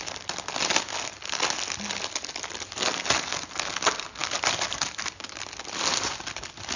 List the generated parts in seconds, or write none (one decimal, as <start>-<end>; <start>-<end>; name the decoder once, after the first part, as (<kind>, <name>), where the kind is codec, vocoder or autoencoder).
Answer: none